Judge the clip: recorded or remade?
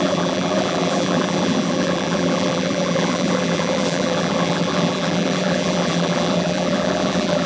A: remade